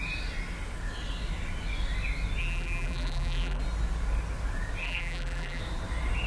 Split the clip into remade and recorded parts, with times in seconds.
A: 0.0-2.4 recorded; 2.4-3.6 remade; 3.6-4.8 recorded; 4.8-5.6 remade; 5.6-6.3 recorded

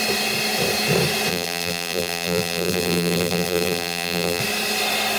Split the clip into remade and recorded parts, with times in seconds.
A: 0.0-1.3 recorded; 1.3-4.4 remade; 4.4-5.2 recorded

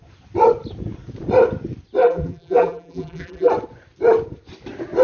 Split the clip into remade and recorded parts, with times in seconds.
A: 0.0-2.0 recorded; 2.0-3.5 remade; 3.5-5.0 recorded

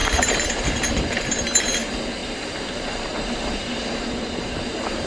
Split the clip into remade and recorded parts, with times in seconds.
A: 0.0-0.7 remade; 0.7-2.2 recorded; 2.2-5.1 remade

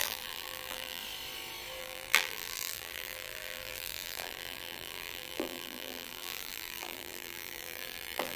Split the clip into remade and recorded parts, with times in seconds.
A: 0.0-1.0 remade; 1.0-1.8 recorded; 1.8-8.4 remade

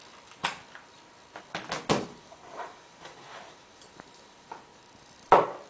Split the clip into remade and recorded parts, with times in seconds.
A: 0.0-1.9 recorded; 1.9-5.3 remade; 5.3-5.7 recorded

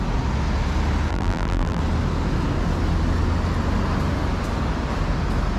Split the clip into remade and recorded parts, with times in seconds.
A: 0.0-1.1 recorded; 1.1-1.8 remade; 1.8-5.6 recorded

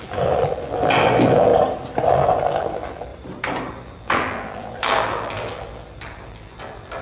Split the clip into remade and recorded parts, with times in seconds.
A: 0.0-1.5 remade; 1.5-2.1 recorded; 2.1-3.1 remade; 3.1-3.7 recorded; 3.7-7.0 remade